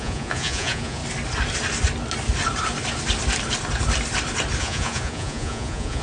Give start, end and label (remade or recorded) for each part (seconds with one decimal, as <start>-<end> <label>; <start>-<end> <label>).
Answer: 0.0-1.0 remade; 1.0-4.6 recorded; 4.6-6.0 remade